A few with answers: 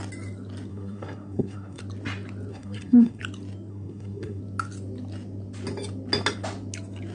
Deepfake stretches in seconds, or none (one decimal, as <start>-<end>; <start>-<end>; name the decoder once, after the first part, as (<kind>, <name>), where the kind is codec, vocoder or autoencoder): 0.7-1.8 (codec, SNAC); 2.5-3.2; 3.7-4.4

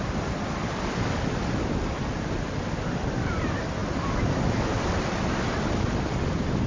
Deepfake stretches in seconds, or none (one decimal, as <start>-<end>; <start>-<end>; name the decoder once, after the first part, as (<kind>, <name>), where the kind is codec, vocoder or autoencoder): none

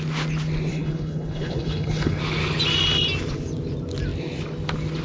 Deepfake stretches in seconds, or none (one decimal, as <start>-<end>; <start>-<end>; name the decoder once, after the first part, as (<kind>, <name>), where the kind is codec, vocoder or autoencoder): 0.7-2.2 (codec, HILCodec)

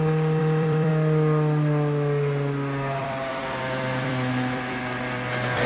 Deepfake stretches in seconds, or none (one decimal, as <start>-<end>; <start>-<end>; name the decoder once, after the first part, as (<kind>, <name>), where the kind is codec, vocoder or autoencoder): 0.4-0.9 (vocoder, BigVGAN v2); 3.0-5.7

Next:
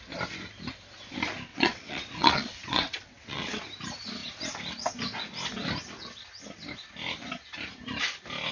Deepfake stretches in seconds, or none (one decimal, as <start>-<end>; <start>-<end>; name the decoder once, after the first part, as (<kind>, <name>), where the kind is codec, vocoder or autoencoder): 1.5-3.6 (vocoder, WaveNeXt)